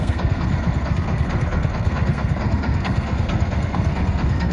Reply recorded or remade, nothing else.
remade